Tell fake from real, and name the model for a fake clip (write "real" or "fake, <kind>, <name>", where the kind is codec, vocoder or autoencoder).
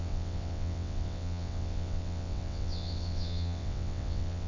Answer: fake, vocoder, WaveNeXt